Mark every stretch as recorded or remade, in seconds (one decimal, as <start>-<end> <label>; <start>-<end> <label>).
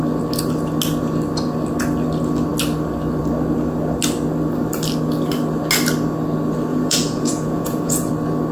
0.0-6.7 recorded; 6.7-8.1 remade; 8.1-8.5 recorded